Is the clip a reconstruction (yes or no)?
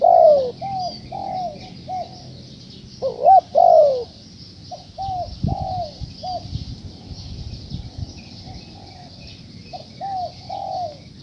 no